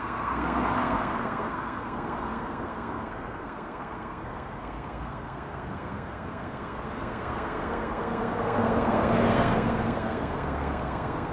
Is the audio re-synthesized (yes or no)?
yes